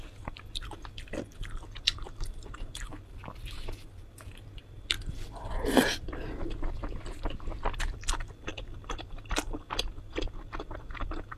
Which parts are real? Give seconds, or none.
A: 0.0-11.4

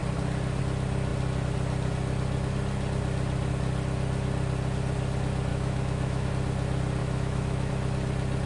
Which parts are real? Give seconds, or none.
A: 0.0-5.5; 6.3-7.0; 7.7-8.5